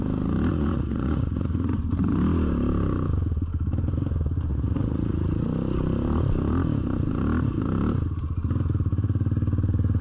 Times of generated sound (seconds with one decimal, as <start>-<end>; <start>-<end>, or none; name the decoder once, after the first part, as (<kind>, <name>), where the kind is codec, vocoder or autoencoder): 0.5-1.7 (vocoder, Vocos); 4.5-5.4